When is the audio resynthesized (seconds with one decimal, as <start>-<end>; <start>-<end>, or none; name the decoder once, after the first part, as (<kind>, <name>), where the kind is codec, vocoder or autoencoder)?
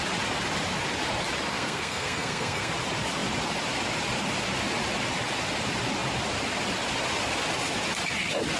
1.5-2.7 (codec, SNAC)